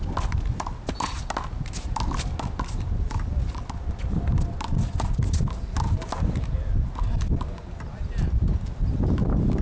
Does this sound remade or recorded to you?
recorded